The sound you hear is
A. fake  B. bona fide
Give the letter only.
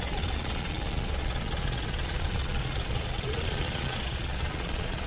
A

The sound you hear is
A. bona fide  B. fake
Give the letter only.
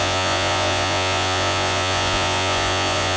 B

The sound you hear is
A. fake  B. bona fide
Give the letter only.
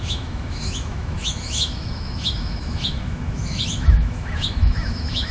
A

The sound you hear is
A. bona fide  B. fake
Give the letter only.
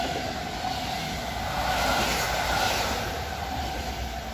A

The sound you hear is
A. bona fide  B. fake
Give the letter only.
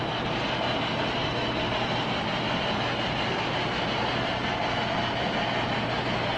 B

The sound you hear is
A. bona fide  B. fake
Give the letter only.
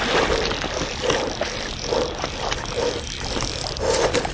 A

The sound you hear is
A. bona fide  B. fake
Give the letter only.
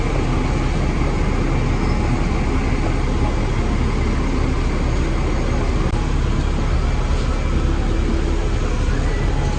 A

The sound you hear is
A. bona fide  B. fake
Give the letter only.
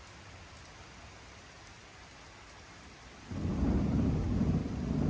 A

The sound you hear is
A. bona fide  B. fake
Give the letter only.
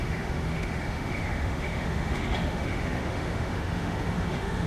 B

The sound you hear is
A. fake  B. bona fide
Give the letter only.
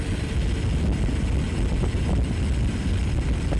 A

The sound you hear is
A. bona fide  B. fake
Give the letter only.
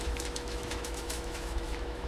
B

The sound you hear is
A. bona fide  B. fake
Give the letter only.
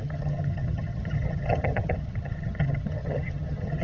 B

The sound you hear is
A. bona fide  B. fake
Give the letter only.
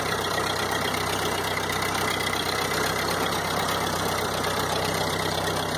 B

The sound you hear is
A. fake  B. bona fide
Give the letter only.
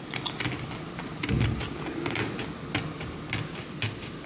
B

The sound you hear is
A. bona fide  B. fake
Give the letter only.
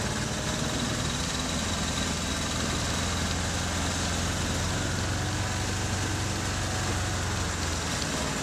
A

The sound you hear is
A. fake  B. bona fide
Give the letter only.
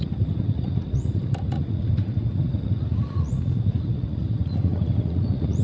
A